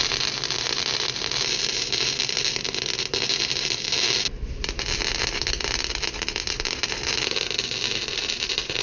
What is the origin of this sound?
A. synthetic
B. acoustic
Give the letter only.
B